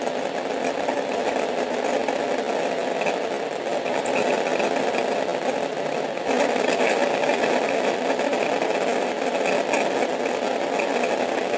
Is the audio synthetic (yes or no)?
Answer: no